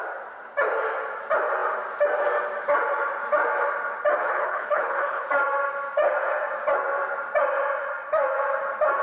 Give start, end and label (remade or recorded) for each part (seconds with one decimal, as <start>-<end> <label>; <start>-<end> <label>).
0.0-4.2 recorded; 4.2-5.3 remade; 5.3-9.0 recorded